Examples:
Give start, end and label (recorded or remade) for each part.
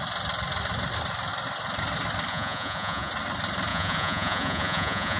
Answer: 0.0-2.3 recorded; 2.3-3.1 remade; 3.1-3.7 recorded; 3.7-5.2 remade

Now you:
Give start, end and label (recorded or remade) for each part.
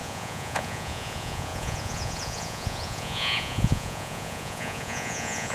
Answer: 0.0-5.5 remade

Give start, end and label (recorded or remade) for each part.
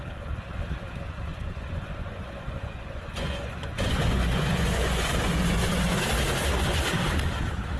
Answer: 0.0-1.3 recorded; 1.3-6.0 remade; 6.0-7.8 recorded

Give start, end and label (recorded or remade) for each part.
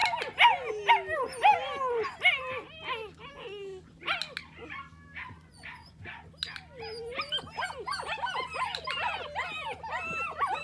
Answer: 0.0-5.2 recorded; 5.2-6.2 remade; 6.2-10.6 recorded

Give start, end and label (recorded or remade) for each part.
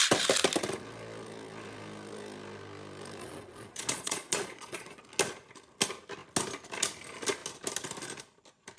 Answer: 0.0-3.2 recorded; 3.2-5.0 remade; 5.0-8.8 recorded